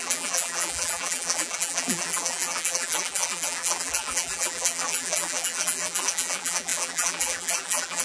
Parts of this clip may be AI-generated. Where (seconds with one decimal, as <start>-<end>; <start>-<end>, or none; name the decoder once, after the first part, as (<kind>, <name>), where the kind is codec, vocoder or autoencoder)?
0.0-8.0 (vocoder, BigVGAN v2)